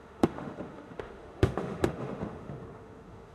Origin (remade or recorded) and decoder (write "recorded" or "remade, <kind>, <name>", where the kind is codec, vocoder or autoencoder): remade, autoencoder, DAC-VAE